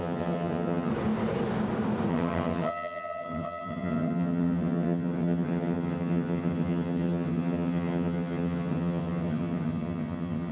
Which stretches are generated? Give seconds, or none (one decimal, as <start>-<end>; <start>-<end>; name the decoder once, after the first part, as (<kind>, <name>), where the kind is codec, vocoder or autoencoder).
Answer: 0.0-0.9 (vocoder, HiFi-GAN); 2.1-10.5